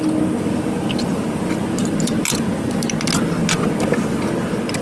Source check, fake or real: real